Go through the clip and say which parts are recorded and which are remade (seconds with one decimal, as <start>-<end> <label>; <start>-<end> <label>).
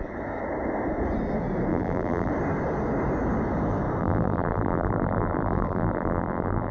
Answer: 0.0-1.7 recorded; 1.7-2.3 remade; 2.3-4.0 recorded; 4.0-6.7 remade